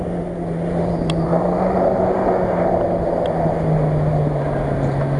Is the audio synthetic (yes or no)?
no